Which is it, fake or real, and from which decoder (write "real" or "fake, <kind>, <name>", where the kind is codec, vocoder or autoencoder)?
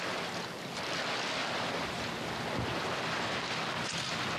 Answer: real